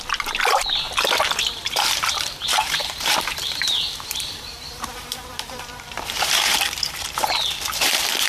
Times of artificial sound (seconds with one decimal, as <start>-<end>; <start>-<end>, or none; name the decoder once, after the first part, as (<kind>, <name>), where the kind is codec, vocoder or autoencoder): 1.6-2.3 (vocoder, BigVGAN v2); 2.8-6.7